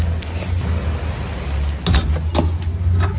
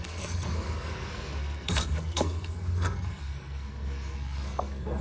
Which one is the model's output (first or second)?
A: second